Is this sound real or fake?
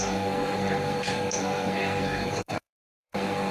fake